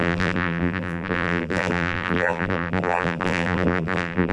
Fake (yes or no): yes